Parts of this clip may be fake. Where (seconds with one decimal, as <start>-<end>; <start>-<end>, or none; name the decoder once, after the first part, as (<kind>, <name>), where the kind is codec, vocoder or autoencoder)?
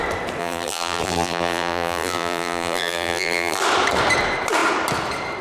0.4-3.6 (vocoder, BigVGAN v2)